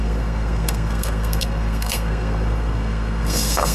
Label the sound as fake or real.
fake